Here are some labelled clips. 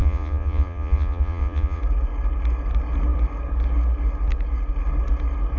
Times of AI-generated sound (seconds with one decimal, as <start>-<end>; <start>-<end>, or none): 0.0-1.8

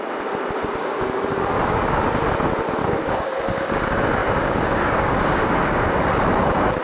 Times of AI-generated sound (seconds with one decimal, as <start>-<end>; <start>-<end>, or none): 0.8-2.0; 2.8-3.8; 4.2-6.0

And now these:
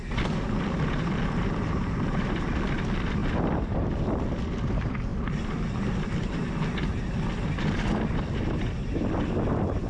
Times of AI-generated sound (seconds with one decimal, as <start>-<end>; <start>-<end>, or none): 0.0-3.2; 3.7-5.1; 7.7-9.9

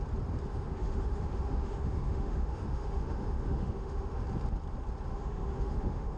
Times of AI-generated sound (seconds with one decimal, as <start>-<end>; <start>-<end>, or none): 0.5-4.2; 5.1-6.2

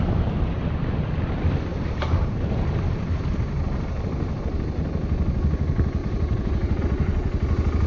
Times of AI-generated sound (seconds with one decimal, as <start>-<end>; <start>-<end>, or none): 6.0-6.8

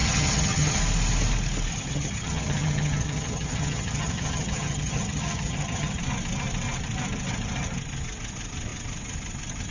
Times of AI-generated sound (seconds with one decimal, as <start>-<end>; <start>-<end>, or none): 0.0-0.8; 1.7-6.0

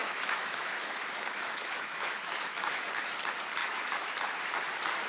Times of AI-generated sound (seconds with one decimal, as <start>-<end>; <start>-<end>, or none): 0.0-2.9; 3.6-4.1

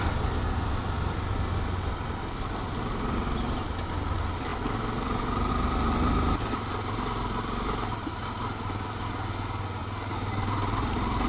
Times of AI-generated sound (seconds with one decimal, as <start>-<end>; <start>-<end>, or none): none